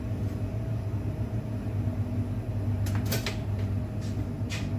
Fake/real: real